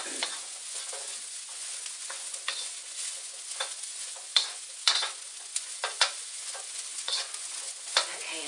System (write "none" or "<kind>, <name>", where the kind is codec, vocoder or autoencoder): vocoder, Vocos